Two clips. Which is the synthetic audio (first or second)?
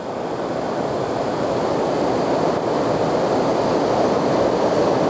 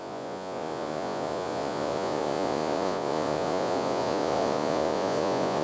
second